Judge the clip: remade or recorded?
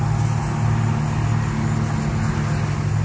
recorded